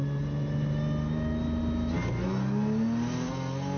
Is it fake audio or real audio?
real